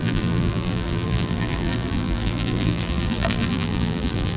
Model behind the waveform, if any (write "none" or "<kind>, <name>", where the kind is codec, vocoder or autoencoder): vocoder, BigVGAN v2